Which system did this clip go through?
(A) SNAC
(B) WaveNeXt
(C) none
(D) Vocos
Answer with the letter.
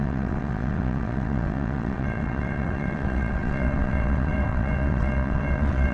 B